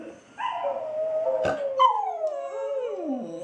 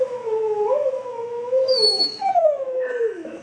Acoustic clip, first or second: first